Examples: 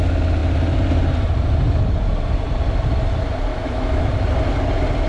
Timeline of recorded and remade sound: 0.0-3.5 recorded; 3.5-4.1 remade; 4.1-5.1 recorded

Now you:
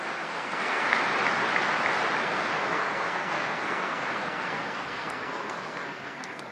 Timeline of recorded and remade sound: 0.0-1.1 remade; 1.1-2.2 recorded; 2.2-6.5 remade

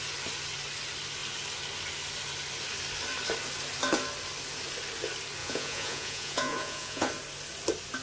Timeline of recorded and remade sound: 0.0-5.4 recorded; 5.4-7.1 remade; 7.1-8.0 recorded

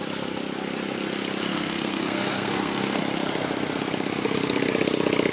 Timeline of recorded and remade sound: 0.0-1.5 recorded; 1.5-3.0 remade; 3.0-5.3 recorded

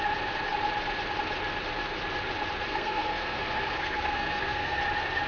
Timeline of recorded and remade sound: 0.0-2.7 recorded; 2.7-4.8 remade; 4.8-5.3 recorded

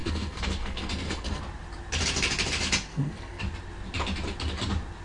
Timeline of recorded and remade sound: 0.0-1.4 remade; 1.4-2.9 recorded; 2.9-3.4 remade; 3.4-5.0 recorded

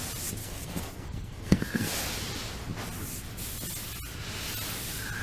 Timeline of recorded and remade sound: 0.0-0.4 recorded; 0.4-1.9 remade; 1.9-5.2 recorded